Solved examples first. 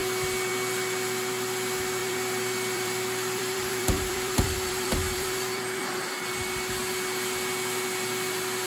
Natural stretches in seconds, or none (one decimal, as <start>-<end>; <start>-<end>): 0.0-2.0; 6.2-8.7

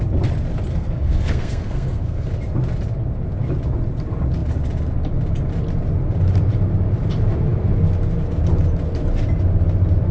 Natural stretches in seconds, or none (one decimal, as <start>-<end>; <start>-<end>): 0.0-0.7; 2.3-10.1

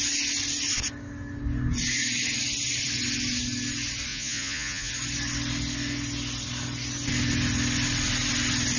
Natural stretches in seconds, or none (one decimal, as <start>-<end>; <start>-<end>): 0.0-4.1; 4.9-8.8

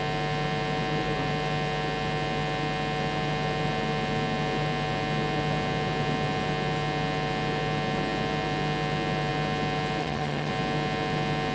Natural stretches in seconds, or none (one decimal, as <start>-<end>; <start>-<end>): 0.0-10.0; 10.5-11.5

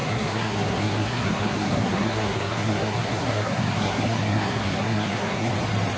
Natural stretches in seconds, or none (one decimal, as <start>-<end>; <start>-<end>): 5.5-6.0

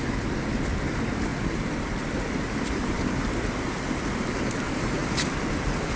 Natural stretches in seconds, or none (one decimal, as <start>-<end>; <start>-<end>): 0.0-5.0

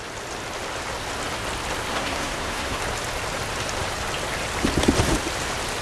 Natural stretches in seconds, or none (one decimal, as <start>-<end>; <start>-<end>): 0.0-1.9; 2.8-5.8

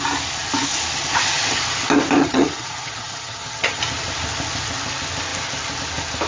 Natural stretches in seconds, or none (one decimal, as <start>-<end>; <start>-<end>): 0.0-2.2; 3.8-6.3